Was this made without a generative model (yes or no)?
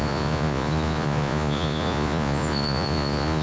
no